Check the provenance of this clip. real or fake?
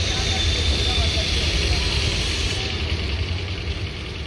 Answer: real